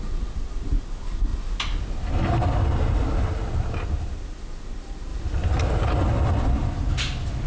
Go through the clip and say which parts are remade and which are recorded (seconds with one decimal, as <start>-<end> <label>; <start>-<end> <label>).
0.0-7.5 recorded